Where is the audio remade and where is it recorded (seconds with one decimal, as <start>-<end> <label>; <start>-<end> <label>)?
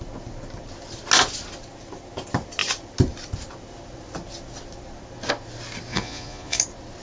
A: 0.0-5.9 recorded; 5.9-6.6 remade; 6.6-7.0 recorded